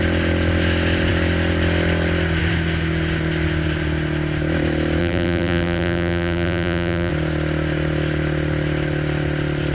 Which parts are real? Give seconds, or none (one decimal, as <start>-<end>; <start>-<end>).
0.0-5.0; 7.1-9.7